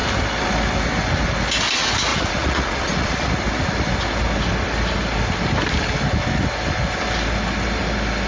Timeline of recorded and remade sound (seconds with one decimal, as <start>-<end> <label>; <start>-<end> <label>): 0.0-2.1 recorded; 2.1-3.3 remade; 3.3-8.3 recorded